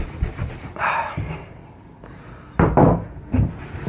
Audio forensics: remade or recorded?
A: recorded